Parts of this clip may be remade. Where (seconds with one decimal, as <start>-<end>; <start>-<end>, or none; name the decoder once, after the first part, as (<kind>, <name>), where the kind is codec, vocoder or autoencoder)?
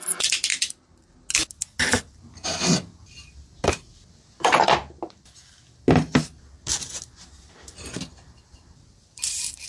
none